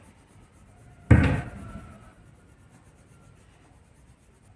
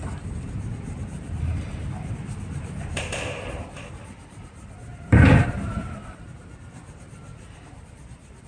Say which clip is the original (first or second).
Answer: first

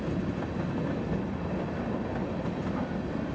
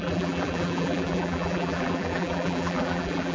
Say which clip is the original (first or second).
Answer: first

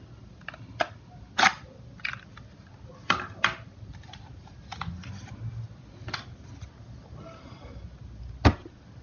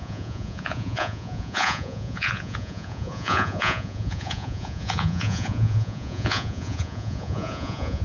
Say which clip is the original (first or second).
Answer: first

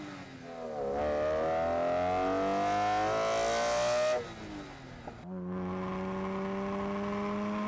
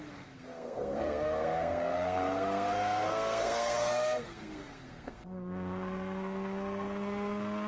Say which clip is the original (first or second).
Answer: first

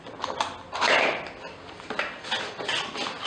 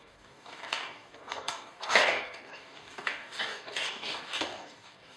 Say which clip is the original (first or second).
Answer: first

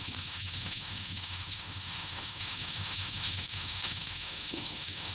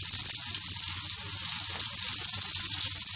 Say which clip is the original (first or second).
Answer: second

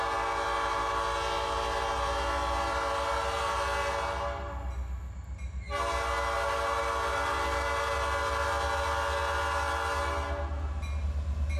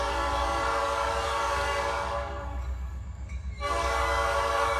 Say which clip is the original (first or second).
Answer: first